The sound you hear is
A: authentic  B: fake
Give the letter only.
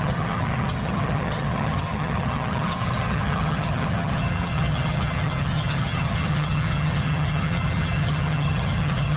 B